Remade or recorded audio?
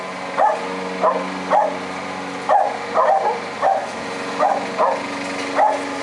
recorded